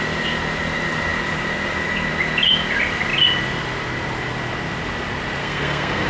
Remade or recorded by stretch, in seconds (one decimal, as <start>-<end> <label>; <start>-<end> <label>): 0.0-5.4 recorded; 5.4-6.1 remade